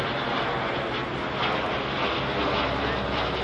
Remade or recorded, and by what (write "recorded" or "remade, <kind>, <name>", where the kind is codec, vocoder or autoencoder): recorded